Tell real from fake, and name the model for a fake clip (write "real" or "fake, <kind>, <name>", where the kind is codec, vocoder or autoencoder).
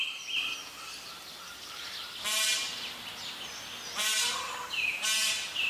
real